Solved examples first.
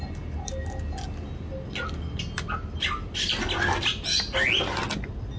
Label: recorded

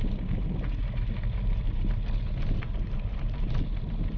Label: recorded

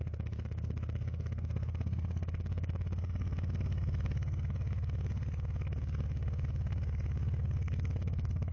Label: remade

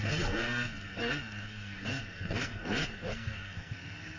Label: remade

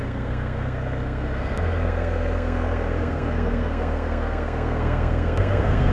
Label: remade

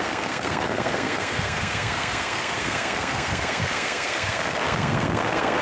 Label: remade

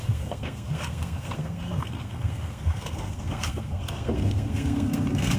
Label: remade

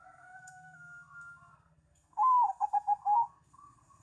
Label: remade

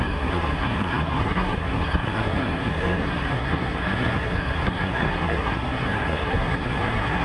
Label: remade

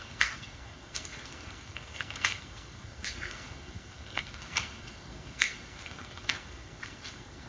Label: remade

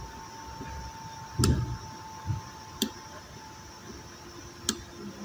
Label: recorded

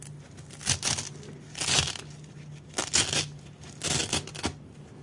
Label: recorded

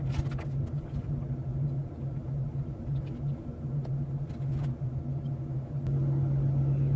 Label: recorded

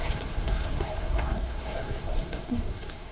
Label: remade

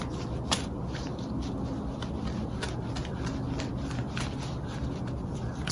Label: recorded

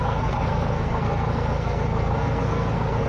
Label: remade